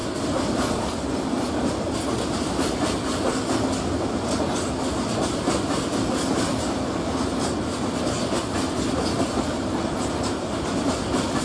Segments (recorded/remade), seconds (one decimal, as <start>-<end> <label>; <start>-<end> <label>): 0.0-11.4 recorded